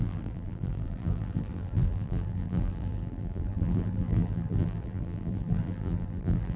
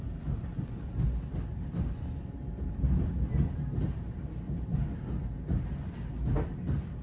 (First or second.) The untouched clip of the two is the second